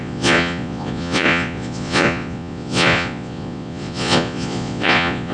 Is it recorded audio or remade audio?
remade